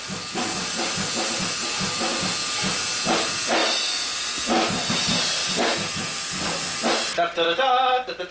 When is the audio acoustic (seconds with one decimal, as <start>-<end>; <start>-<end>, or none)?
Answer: 0.0-8.3